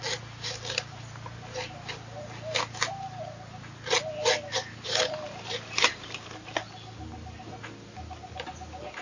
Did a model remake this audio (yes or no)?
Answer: no